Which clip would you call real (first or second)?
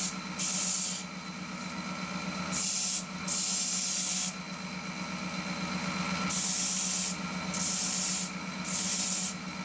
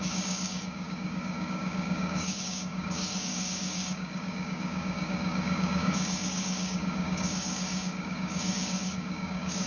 first